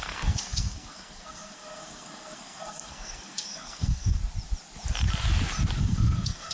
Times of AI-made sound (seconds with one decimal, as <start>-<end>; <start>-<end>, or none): 0.0-4.2; 5.8-6.5